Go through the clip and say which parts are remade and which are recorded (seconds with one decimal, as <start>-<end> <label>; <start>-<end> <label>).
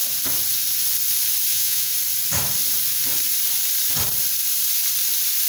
0.0-1.5 recorded; 1.5-1.9 remade; 1.9-5.5 recorded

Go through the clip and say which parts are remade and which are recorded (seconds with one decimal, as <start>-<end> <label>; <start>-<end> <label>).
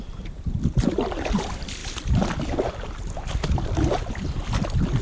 0.0-5.0 recorded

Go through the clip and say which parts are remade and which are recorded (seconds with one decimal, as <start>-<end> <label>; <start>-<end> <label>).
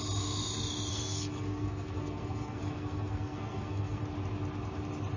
0.0-0.9 recorded; 0.9-4.0 remade; 4.0-5.2 recorded